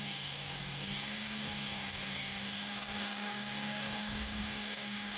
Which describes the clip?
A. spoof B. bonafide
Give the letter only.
A